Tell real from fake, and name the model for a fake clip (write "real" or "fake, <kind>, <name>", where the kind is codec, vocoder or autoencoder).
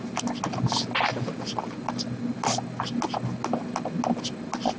real